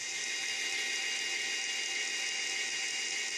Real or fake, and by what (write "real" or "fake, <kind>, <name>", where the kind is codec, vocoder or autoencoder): real